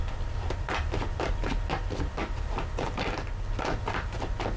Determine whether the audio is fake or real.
real